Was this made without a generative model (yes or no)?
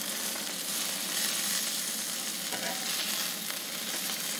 yes